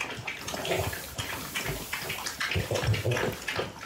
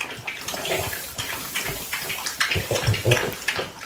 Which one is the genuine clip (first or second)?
first